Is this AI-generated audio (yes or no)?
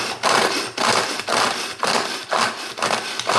no